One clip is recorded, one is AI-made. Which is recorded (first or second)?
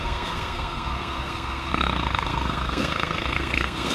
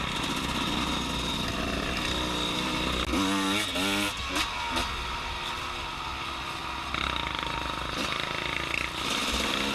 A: second